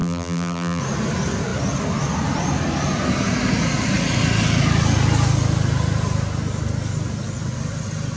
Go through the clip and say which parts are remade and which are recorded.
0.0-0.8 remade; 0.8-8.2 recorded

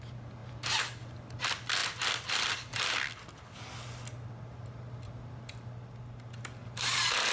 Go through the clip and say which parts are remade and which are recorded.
0.0-7.3 recorded

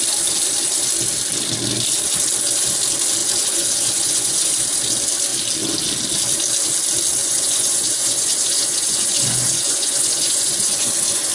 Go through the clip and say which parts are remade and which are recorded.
0.0-3.2 recorded; 3.2-4.5 remade; 4.5-7.2 recorded; 7.2-11.3 remade

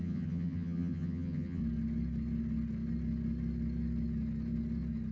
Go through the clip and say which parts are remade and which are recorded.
0.0-1.6 remade; 1.6-5.1 recorded

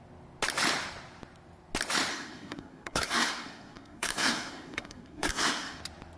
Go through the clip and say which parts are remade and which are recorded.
0.0-2.1 recorded; 2.1-5.8 remade; 5.8-6.2 recorded

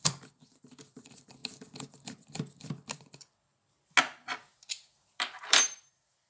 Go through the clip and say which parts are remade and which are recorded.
0.0-1.4 remade; 1.4-5.2 recorded; 5.2-6.3 remade

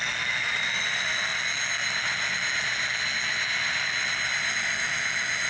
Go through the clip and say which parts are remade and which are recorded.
0.0-5.5 recorded

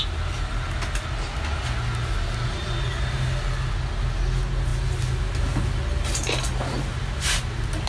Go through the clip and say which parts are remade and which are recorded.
0.0-7.9 recorded